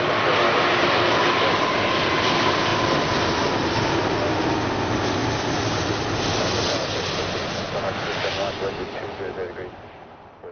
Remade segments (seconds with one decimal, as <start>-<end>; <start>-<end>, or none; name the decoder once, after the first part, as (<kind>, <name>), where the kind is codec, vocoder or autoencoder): none